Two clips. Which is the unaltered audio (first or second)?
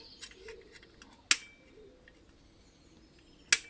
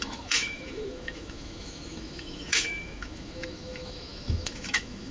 first